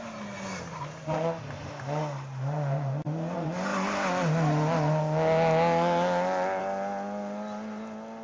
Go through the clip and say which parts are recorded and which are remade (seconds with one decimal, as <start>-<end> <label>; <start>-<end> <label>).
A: 0.0-8.2 recorded